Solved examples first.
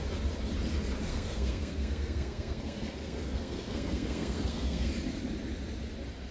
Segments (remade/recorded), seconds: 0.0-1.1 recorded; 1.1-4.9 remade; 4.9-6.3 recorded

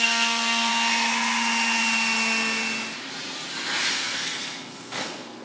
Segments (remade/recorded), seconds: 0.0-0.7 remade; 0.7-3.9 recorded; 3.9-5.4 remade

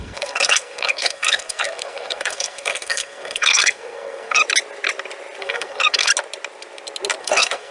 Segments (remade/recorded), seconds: 0.0-4.4 remade; 4.4-5.4 recorded; 5.4-6.1 remade; 6.1-7.2 recorded; 7.2-7.7 remade

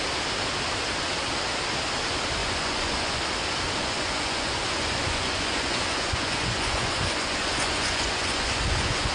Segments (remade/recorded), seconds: 0.0-2.4 recorded; 2.4-3.2 remade; 3.2-3.8 recorded; 3.8-9.1 remade